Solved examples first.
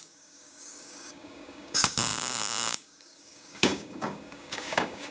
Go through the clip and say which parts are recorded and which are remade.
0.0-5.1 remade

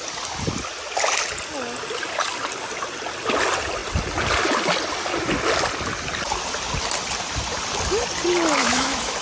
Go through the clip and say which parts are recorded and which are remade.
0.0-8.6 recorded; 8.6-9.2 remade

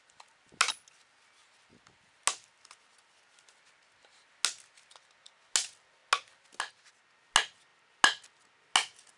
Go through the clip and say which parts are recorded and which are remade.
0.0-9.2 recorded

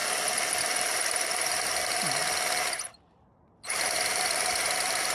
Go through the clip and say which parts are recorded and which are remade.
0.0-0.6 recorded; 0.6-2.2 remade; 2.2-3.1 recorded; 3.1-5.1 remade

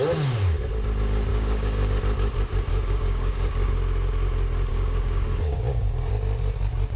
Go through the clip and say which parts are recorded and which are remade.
0.0-1.3 recorded; 1.3-2.0 remade; 2.0-2.7 recorded; 2.7-3.7 remade; 3.7-4.7 recorded; 4.7-6.1 remade; 6.1-7.0 recorded